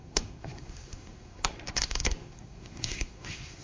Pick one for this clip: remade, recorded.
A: remade